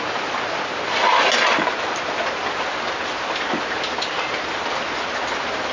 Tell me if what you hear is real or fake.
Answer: real